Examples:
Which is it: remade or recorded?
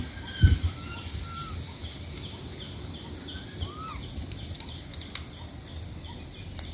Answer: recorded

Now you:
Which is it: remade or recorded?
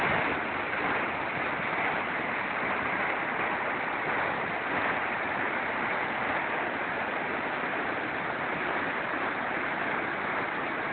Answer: recorded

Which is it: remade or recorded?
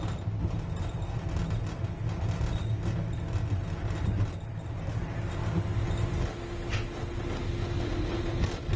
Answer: recorded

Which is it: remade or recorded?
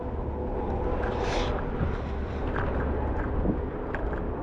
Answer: recorded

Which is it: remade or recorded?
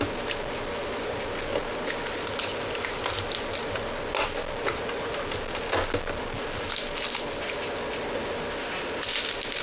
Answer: recorded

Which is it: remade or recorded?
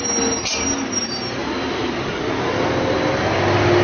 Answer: recorded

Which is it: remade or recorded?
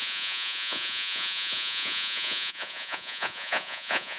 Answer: remade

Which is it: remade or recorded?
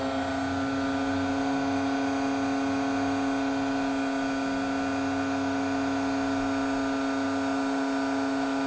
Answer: recorded